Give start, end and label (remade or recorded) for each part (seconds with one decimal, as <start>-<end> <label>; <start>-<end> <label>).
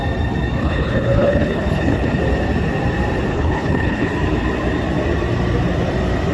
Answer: 0.0-0.6 recorded; 0.6-2.2 remade; 2.2-3.3 recorded; 3.3-4.1 remade; 4.1-6.3 recorded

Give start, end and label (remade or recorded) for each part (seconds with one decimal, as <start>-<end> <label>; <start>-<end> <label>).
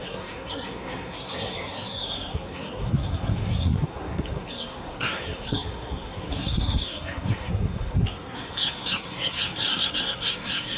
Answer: 0.0-10.8 remade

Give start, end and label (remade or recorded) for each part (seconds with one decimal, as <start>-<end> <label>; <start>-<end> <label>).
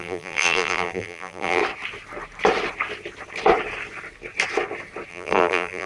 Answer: 0.0-1.6 remade; 1.6-5.1 recorded; 5.1-5.9 remade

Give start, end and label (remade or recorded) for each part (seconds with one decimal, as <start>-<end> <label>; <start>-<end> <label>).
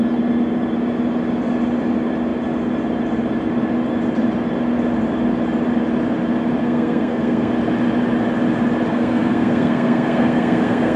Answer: 0.0-6.6 recorded; 6.6-7.5 remade; 7.5-8.9 recorded; 8.9-11.0 remade